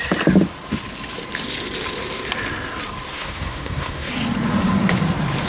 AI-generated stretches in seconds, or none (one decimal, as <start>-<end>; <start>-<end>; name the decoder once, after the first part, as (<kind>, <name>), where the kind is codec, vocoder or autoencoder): 3.1-4.1 (codec, SNAC)